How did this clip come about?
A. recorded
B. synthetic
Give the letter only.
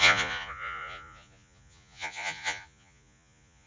B